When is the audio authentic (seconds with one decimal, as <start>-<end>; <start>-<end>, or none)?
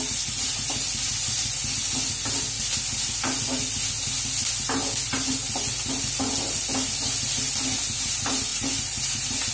0.0-9.5